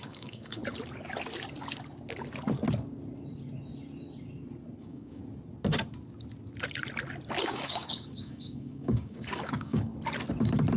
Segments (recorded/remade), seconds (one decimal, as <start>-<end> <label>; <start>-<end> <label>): 0.0-0.6 remade; 0.6-4.8 recorded; 4.8-5.2 remade; 5.2-7.4 recorded; 7.4-9.9 remade; 9.9-10.8 recorded